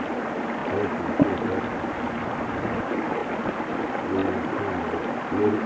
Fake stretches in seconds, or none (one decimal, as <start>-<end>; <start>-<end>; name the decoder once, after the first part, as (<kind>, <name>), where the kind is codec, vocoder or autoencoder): none